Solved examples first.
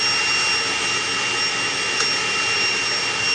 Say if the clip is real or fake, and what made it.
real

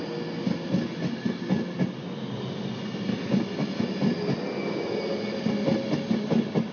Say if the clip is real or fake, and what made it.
real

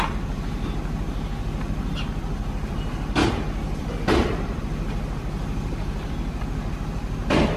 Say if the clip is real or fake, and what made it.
fake, vocoder, BigVGAN v2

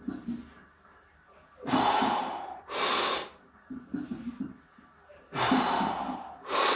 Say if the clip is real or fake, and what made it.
fake, vocoder, BigVGAN v2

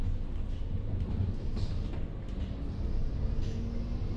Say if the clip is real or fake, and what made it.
real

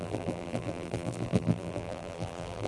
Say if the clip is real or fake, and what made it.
fake, vocoder, BigVGAN v2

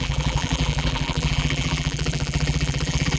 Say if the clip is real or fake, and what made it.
fake, vocoder, BigVGAN v2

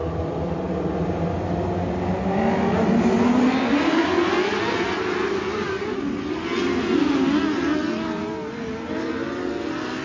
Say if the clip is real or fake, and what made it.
real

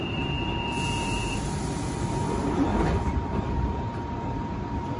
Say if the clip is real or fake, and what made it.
fake, vocoder, BigVGAN v2